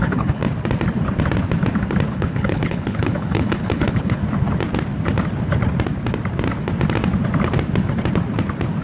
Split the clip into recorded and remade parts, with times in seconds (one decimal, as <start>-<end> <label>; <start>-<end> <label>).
0.0-0.4 remade; 0.4-2.1 recorded; 2.1-4.2 remade; 4.2-8.8 recorded